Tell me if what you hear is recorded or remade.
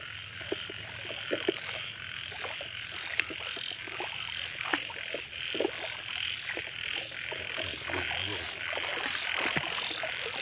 recorded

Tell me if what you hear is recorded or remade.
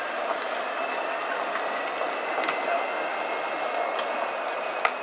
recorded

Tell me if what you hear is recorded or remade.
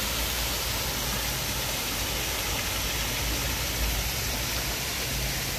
recorded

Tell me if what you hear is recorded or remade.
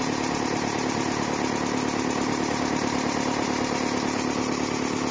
recorded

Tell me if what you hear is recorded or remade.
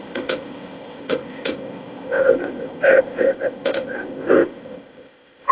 remade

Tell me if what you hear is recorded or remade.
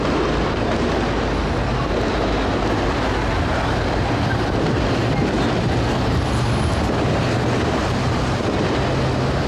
recorded